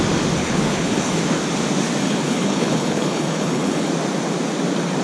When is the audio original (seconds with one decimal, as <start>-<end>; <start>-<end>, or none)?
0.0-0.4; 1.2-2.0; 3.9-5.0